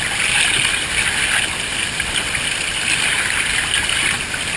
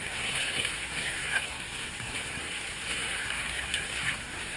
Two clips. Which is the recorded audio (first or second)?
first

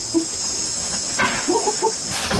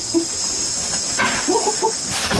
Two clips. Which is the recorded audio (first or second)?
first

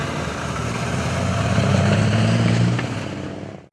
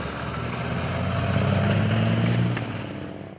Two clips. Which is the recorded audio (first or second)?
second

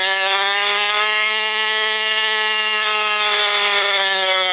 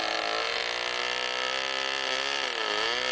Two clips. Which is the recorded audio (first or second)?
second